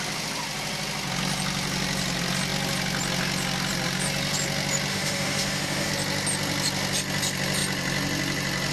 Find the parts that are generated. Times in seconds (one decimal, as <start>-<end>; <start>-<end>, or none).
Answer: 4.9-5.9